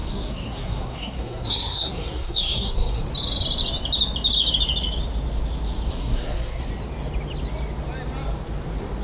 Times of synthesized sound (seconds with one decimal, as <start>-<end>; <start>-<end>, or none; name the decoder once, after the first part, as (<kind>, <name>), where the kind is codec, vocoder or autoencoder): 0.0-3.0 (codec, SNAC); 5.9-6.7